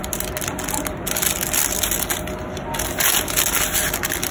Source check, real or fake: real